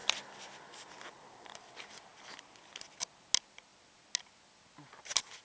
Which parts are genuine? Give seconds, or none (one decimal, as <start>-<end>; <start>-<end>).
1.7-2.1; 2.9-5.4